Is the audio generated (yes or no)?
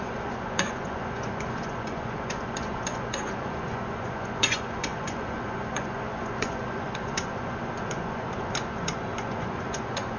yes